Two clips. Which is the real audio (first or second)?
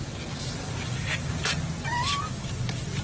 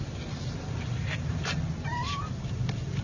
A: first